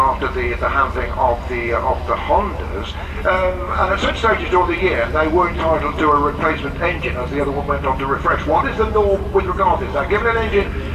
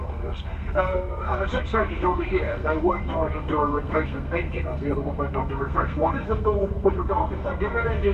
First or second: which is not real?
second